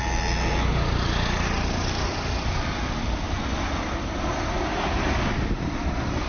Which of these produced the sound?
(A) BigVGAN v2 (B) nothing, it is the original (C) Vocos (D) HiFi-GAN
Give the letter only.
B